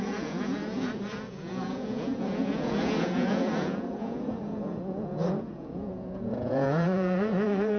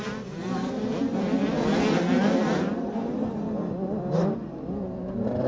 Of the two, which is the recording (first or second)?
second